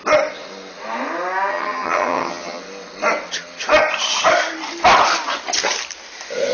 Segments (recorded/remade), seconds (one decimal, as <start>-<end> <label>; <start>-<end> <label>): 0.0-1.5 recorded; 1.5-2.6 remade; 2.6-6.5 recorded